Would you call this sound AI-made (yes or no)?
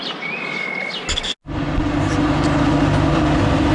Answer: no